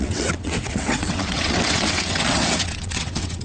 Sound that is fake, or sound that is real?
fake